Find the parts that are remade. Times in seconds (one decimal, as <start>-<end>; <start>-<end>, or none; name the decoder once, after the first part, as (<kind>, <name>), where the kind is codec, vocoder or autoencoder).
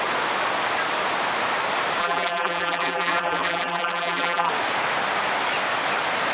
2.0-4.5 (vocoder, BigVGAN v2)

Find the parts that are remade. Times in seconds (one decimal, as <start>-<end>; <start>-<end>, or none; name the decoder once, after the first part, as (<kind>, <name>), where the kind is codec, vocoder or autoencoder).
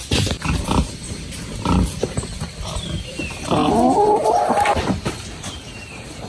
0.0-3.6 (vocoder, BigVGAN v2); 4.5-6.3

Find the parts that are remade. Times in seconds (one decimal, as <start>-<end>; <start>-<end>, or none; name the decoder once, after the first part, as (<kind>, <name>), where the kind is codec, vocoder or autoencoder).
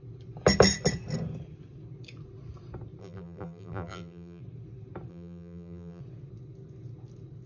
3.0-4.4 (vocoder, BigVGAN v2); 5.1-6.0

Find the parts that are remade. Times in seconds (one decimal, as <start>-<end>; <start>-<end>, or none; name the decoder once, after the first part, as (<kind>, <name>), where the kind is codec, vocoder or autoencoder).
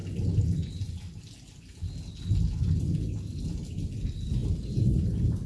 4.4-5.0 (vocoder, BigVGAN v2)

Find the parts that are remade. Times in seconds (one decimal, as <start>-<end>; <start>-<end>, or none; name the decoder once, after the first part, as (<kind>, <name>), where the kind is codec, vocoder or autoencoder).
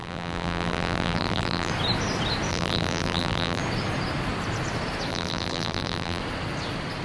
0.0-1.7 (vocoder, BigVGAN v2); 2.5-3.6; 5.1-6.2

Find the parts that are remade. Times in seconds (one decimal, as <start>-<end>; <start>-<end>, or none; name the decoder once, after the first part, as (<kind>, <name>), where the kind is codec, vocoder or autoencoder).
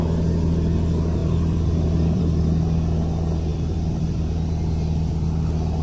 1.2-2.2 (vocoder, BigVGAN v2); 3.5-4.5